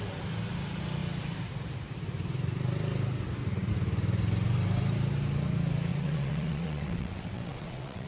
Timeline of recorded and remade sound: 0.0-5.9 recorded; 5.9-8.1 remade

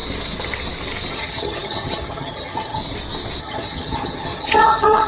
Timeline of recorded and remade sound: 0.0-1.1 recorded; 1.1-2.8 remade; 2.8-3.4 recorded; 3.4-5.1 remade

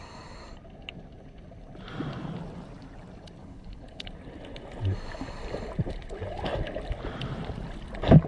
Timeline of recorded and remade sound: 0.0-3.4 recorded; 3.4-4.1 remade; 4.1-8.3 recorded

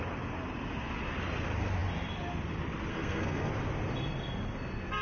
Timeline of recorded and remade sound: 0.0-2.9 recorded; 2.9-3.5 remade; 3.5-5.0 recorded

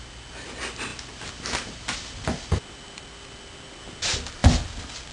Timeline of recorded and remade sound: 0.0-5.1 recorded

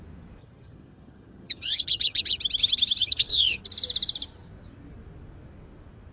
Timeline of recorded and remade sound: 0.0-0.4 recorded; 0.4-2.2 remade; 2.2-3.0 recorded; 3.0-3.6 remade; 3.6-6.1 recorded

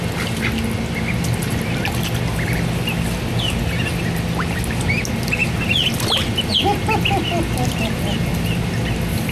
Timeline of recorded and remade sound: 0.0-9.3 recorded

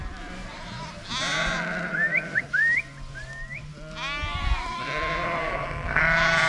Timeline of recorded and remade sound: 0.0-5.4 recorded; 5.4-6.0 remade; 6.0-6.5 recorded